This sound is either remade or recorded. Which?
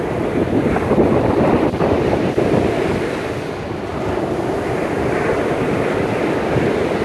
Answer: recorded